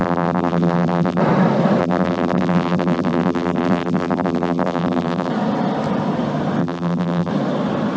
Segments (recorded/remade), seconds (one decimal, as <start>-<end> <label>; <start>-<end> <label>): 0.0-1.2 remade; 1.2-1.8 recorded; 1.8-5.3 remade; 5.3-6.6 recorded; 6.6-7.3 remade; 7.3-8.0 recorded